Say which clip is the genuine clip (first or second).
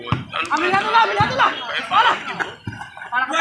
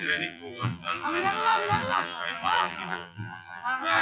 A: first